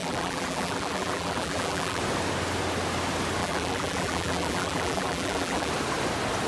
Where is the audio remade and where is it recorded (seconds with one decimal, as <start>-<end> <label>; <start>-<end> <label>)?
0.0-2.0 remade; 2.0-3.4 recorded; 3.4-5.7 remade; 5.7-6.5 recorded